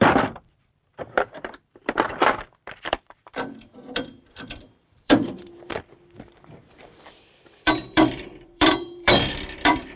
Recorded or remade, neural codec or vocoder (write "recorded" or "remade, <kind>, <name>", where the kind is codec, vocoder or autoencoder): remade, vocoder, BigVGAN v2